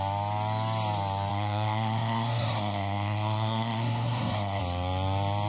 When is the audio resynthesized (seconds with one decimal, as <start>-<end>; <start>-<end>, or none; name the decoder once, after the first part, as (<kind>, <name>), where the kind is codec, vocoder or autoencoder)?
1.3-4.6 (codec, SNAC)